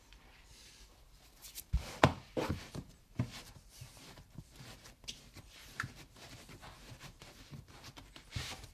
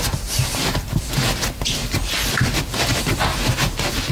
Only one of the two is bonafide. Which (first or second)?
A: second